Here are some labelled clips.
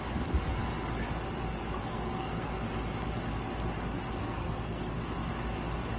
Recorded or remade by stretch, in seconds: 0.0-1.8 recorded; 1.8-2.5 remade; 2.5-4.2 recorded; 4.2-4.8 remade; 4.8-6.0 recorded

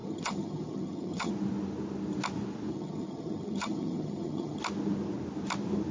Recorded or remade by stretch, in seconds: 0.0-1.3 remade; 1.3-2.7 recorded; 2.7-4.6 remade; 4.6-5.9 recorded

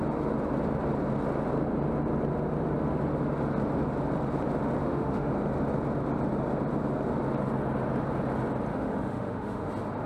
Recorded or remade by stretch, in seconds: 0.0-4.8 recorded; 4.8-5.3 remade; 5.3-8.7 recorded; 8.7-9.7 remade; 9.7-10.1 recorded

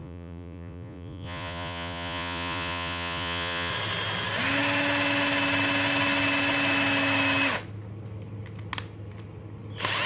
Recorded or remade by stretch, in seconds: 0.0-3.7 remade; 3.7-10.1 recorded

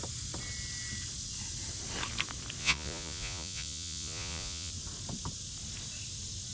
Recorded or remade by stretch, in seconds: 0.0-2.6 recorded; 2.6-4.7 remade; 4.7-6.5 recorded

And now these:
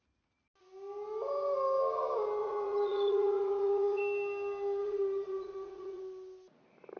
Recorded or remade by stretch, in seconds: 0.0-2.4 recorded; 2.4-4.0 remade; 4.0-4.8 recorded; 4.8-6.0 remade; 6.0-7.0 recorded